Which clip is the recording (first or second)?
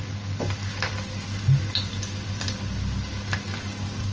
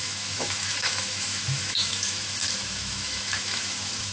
first